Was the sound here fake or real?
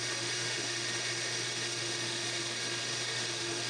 fake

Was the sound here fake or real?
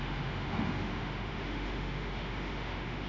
fake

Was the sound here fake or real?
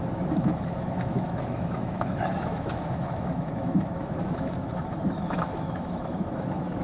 fake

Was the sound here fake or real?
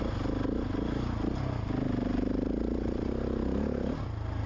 real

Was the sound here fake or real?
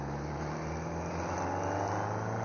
real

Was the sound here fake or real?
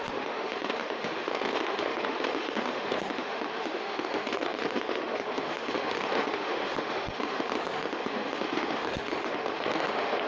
fake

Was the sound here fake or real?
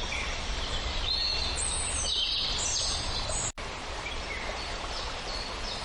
real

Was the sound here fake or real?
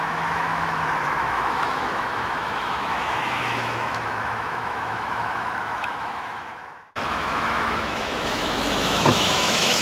fake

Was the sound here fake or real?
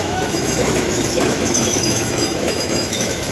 fake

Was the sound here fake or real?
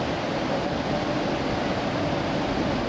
real